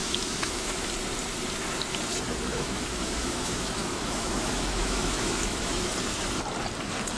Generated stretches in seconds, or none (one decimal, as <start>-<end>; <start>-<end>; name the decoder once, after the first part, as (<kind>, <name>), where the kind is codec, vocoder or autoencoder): 0.0-0.9 (autoencoder, DAC-VAE); 2.5-5.9